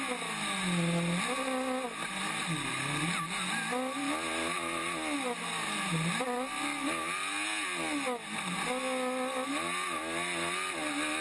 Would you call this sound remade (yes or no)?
no